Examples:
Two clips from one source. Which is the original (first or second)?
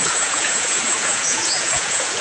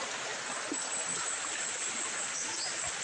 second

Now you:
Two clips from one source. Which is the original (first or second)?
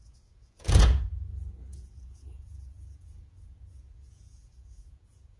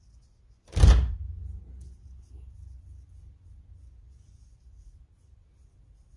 second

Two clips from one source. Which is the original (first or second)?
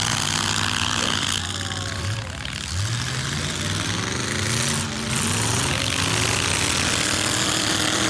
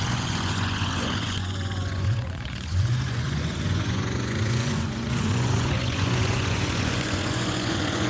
first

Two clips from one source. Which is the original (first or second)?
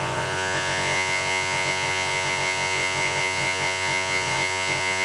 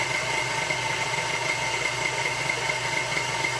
second